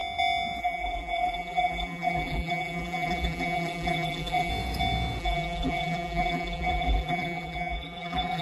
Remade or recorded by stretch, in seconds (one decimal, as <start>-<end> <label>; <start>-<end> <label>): 0.0-0.6 recorded; 0.6-4.5 remade; 4.5-5.2 recorded; 5.2-8.4 remade